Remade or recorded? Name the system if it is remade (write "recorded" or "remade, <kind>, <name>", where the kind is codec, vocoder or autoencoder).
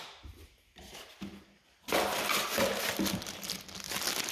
recorded